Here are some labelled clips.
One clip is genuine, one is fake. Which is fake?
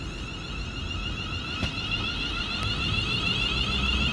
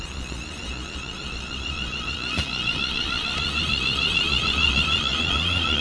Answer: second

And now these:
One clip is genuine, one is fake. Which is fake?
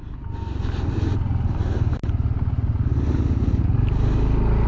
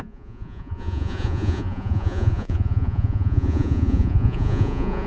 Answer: second